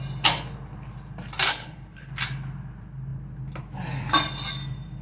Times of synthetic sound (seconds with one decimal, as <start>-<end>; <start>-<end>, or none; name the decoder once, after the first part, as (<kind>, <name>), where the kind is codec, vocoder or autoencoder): 1.5-2.1 (codec, HILCodec)